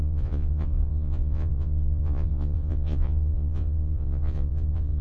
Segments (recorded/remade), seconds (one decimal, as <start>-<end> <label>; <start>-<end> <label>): 0.0-5.0 remade